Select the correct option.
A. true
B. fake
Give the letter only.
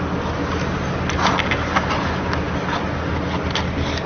A